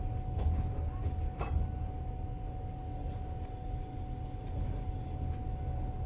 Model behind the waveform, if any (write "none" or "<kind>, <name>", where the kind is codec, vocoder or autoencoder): none